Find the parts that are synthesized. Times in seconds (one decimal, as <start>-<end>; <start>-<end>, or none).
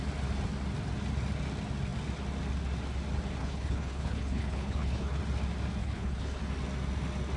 3.4-5.2; 5.8-6.4